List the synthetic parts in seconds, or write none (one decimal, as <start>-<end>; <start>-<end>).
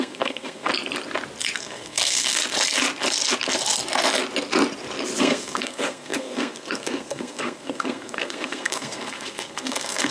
0.0-0.7; 1.6-2.4; 5.2-10.1